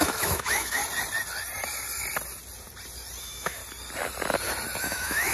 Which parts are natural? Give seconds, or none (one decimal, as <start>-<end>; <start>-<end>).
0.8-3.2; 3.6-4.8